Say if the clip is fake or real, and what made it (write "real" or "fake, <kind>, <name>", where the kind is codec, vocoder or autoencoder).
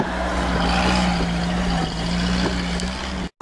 real